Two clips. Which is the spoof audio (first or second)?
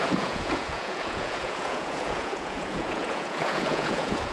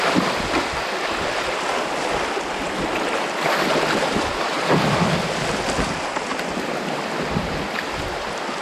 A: first